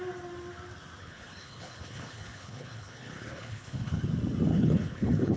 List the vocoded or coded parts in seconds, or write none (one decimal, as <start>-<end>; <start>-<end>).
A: 1.0-4.0; 4.5-5.4